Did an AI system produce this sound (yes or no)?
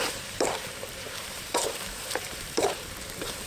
yes